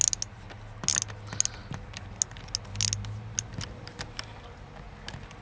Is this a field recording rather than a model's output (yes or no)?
yes